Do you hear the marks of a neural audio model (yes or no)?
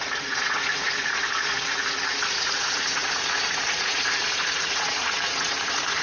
yes